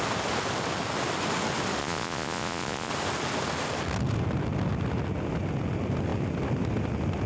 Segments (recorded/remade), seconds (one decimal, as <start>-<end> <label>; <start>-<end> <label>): 0.0-1.8 recorded; 1.8-2.9 remade; 2.9-7.3 recorded